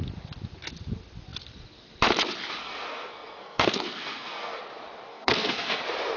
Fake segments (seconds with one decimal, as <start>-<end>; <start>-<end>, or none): 2.6-4.6; 5.1-5.8